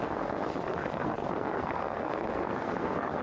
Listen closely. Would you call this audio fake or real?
fake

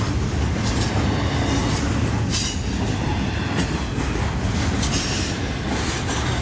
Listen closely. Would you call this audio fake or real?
real